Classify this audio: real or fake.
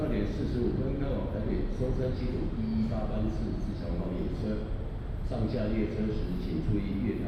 real